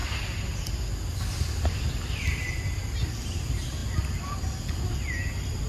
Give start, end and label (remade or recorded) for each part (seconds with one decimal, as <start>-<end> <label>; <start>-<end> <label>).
0.0-1.8 recorded; 1.8-5.7 remade